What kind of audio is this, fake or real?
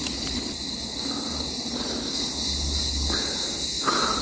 real